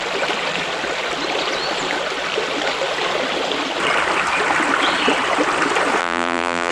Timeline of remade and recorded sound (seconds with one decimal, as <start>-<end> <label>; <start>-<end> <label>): 0.0-6.0 recorded; 6.0-6.7 remade